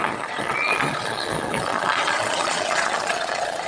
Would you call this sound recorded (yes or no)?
no